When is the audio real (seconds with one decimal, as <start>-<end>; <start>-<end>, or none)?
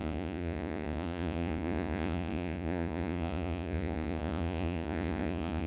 none